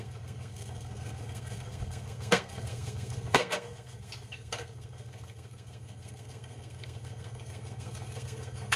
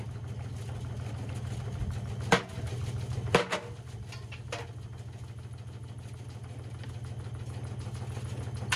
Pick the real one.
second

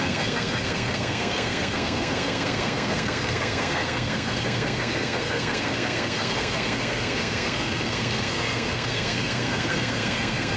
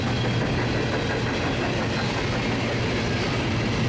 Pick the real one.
second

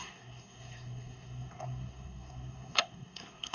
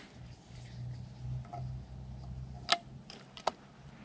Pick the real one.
second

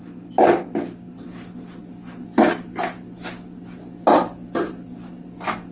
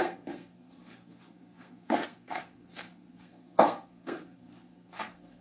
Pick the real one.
first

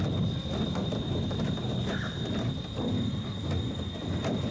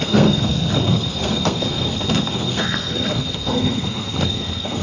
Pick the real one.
first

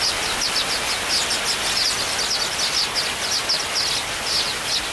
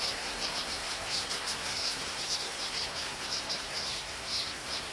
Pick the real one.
first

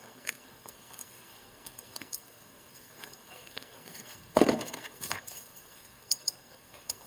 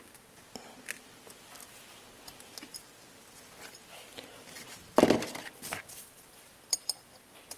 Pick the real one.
second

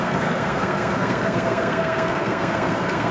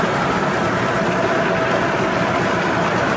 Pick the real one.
second